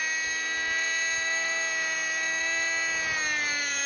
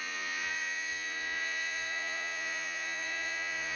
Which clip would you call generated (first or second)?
second